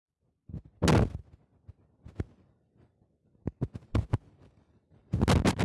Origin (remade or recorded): recorded